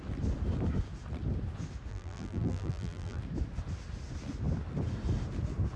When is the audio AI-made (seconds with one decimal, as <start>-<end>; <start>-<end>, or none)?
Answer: 1.9-3.2